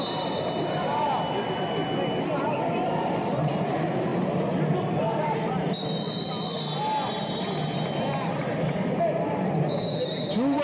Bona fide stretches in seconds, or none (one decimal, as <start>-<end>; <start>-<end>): 0.0-10.6